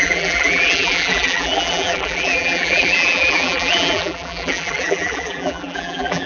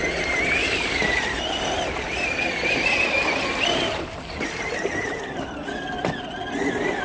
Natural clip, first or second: second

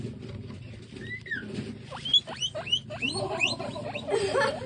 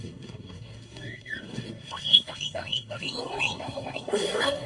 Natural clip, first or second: first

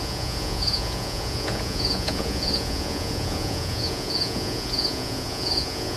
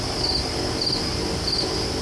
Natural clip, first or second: second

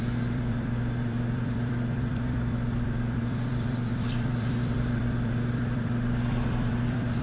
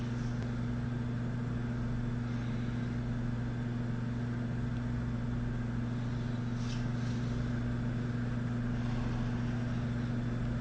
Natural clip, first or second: second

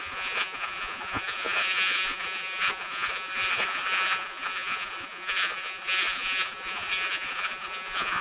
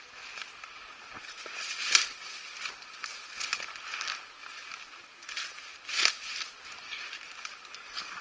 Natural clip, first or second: second